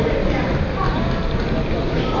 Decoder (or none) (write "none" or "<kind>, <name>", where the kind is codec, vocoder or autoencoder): none